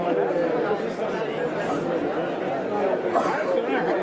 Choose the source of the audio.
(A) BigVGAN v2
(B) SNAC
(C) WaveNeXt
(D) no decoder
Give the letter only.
D